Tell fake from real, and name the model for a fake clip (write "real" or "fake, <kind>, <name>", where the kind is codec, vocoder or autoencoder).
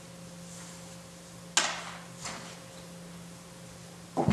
real